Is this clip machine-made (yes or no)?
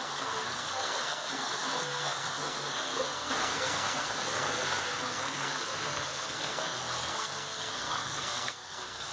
yes